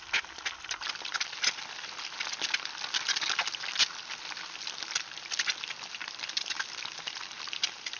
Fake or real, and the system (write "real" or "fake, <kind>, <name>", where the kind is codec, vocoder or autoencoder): real